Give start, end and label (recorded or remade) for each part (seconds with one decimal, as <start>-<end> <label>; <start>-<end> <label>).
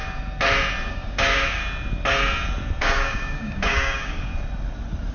0.0-0.9 recorded; 0.9-1.6 remade; 1.6-2.8 recorded; 2.8-4.3 remade; 4.3-5.1 recorded